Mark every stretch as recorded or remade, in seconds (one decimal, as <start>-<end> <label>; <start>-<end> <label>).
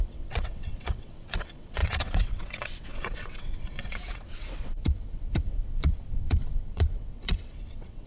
0.0-8.1 remade